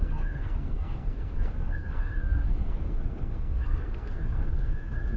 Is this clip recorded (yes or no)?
no